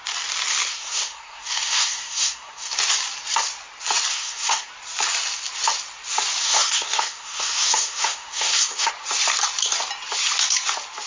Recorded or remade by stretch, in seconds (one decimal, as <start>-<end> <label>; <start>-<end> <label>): 0.0-0.7 recorded; 0.7-2.8 remade; 2.8-4.1 recorded; 4.1-4.7 remade; 4.7-6.4 recorded; 6.4-8.9 remade; 8.9-11.1 recorded